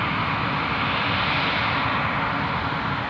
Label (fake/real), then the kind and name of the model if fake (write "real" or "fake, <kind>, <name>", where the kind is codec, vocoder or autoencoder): real